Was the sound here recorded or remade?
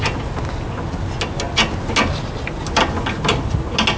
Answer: recorded